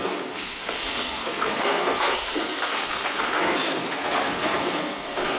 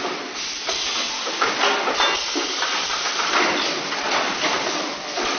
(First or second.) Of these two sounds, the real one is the second